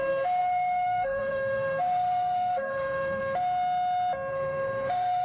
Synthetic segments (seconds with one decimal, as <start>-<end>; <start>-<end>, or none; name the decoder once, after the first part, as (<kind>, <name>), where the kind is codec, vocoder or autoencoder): 0.0-3.2 (codec, SNAC); 4.3-5.2